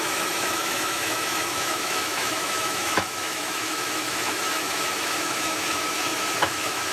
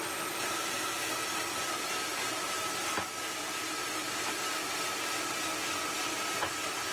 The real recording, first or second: second